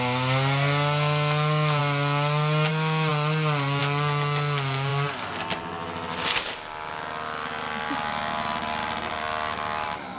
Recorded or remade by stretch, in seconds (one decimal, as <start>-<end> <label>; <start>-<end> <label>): 0.0-10.2 recorded